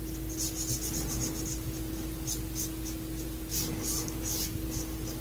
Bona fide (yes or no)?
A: yes